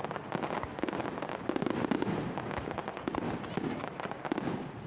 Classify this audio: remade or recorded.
recorded